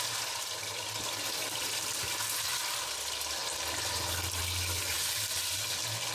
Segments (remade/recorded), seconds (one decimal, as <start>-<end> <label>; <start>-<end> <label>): 0.0-6.1 recorded